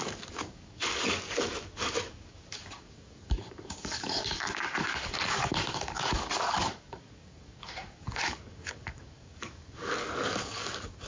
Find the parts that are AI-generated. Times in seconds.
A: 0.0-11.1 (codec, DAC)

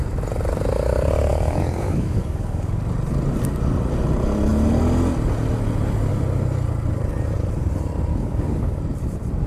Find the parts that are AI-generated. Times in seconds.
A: 1.3-2.8 (codec, DAC); 8.1-8.8

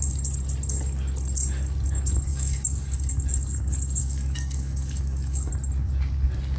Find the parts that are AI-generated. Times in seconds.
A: 2.3-3.1 (codec, DAC); 4.0-5.5

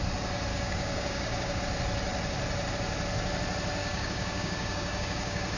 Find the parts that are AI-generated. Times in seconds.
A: 0.5-1.6 (codec, DAC); 3.8-5.6

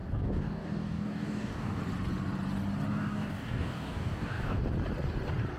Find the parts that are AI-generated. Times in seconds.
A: 0.0-1.8 (codec, DAC); 2.9-4.6